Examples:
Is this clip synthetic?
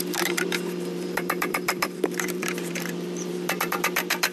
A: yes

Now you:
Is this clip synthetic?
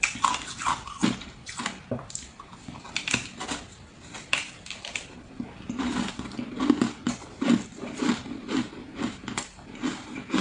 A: yes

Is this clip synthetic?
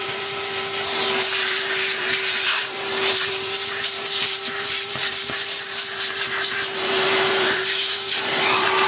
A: yes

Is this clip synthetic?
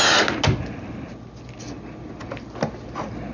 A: no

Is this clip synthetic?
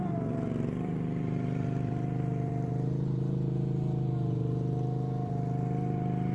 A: yes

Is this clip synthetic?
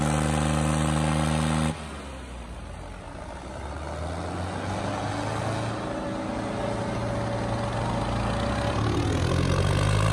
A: no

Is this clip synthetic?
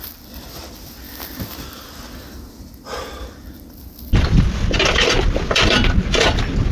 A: no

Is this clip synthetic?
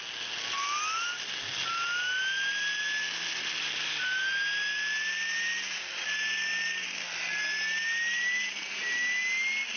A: no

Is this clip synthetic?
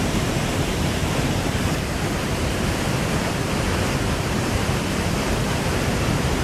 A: yes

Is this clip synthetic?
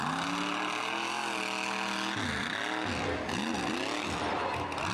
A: no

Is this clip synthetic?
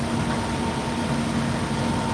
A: no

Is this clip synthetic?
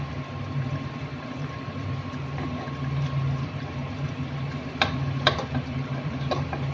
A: yes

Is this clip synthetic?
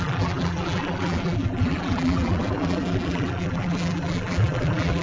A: yes